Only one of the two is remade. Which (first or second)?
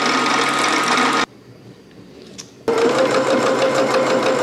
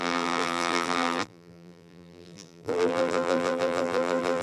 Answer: second